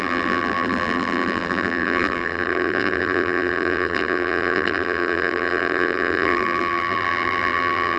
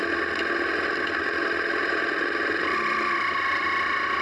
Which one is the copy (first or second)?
first